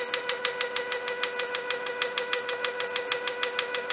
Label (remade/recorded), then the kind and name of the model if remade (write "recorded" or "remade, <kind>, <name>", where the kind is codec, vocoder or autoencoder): recorded